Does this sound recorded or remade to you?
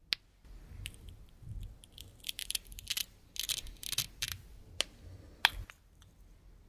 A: recorded